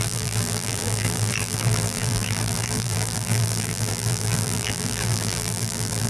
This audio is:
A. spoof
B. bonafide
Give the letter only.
A